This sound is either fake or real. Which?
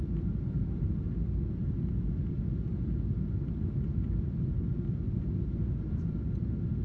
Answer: real